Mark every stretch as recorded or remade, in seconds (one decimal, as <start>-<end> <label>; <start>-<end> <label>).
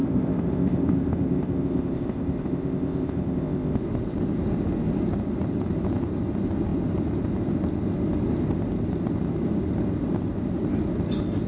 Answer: 0.0-3.8 remade; 3.8-11.5 recorded